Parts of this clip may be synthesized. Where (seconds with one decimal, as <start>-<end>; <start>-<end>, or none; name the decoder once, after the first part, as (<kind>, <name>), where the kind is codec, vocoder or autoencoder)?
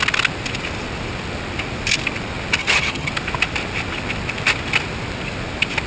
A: 2.6-3.1 (vocoder, HiFi-GAN)